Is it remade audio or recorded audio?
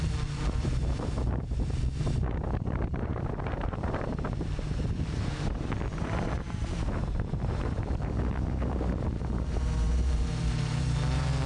remade